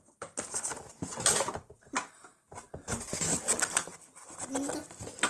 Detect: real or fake real